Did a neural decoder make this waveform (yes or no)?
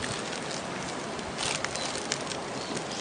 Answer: no